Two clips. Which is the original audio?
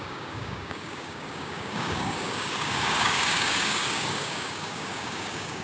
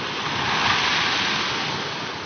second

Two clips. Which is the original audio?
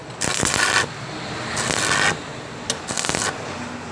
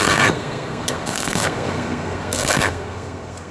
first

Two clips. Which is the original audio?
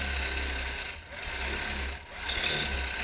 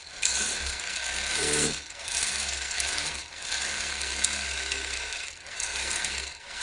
first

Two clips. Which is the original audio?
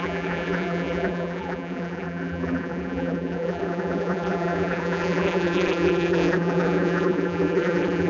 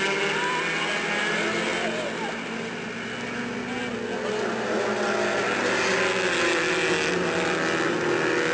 second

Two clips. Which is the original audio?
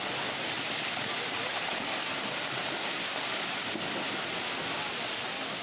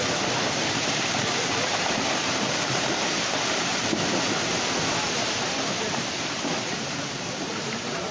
first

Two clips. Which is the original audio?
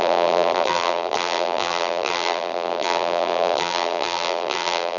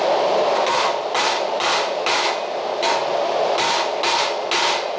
second